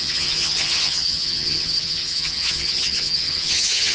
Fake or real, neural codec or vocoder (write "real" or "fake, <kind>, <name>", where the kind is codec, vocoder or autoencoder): fake, vocoder, HiFi-GAN